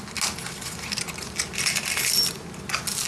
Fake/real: real